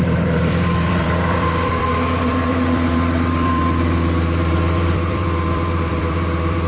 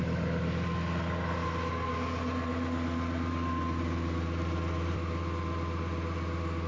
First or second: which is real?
second